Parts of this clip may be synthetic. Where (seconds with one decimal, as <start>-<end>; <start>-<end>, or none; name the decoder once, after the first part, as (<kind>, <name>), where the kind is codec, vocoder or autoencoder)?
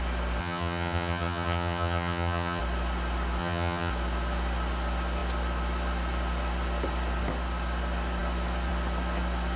0.4-2.6 (vocoder, HiFi-GAN); 3.4-3.9